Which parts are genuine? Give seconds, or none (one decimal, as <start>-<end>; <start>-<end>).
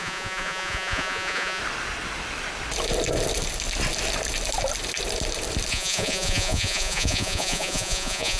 1.6-5.7